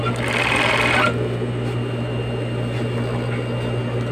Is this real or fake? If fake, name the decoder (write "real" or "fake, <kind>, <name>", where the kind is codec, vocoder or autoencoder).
real